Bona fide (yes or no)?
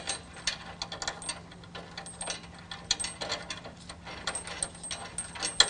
yes